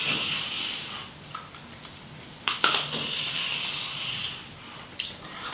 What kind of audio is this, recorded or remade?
recorded